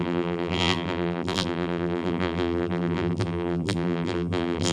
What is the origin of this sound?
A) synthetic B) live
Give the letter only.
A